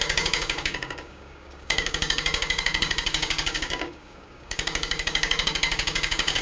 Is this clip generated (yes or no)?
yes